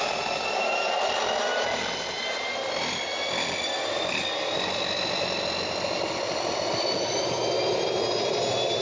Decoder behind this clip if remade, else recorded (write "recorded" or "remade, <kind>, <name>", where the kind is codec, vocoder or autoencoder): recorded